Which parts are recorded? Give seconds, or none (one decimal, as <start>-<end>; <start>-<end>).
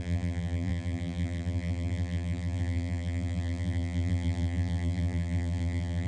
none